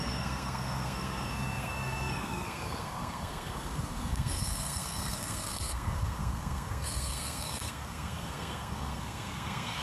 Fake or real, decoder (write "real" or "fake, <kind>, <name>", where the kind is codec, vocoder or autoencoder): fake, codec, SNAC